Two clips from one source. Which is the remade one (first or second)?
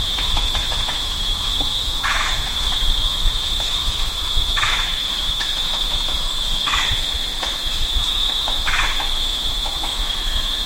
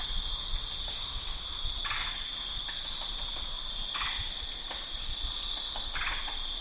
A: first